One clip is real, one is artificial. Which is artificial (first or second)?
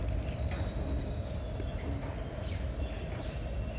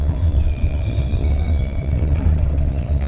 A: second